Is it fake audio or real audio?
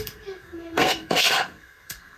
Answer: fake